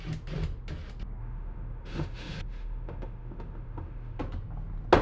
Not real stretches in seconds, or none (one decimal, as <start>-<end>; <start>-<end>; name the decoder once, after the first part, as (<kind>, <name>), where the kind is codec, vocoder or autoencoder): 1.2-4.2 (autoencoder, DAC-VAE)